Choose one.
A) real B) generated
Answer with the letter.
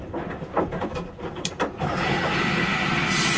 A